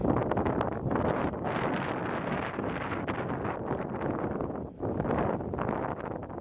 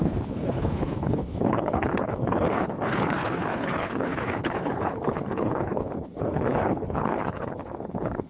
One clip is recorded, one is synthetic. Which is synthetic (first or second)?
second